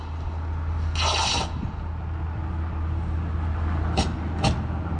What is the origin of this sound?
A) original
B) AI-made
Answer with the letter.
A